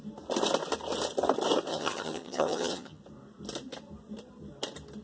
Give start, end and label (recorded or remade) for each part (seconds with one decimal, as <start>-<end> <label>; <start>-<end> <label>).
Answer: 0.0-1.7 recorded; 1.7-3.0 remade; 3.0-5.0 recorded